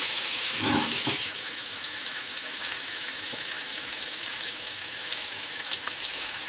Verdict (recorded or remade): remade